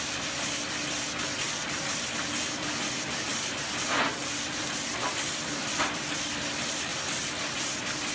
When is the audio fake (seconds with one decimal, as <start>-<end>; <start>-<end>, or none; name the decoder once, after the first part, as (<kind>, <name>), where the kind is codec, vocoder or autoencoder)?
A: 0.0-6.9 (vocoder, BigVGAN v2)